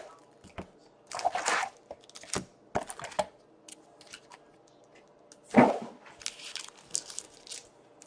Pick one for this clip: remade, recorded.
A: recorded